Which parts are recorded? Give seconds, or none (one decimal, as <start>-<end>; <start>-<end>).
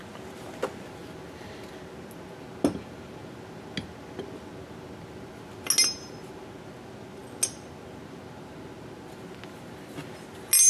0.0-10.7